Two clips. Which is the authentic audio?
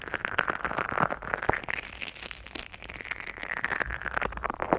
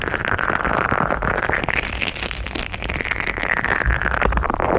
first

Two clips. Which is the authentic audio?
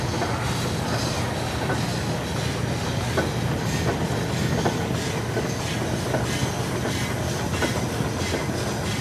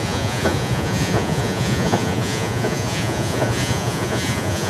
first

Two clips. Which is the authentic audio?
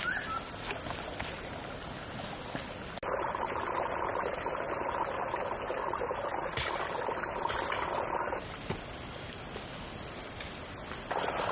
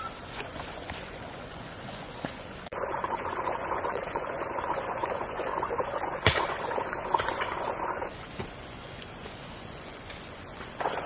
first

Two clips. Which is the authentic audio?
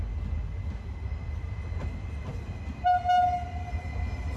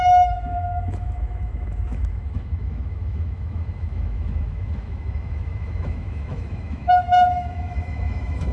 first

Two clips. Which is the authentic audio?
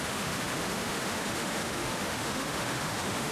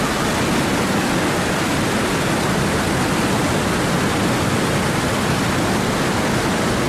second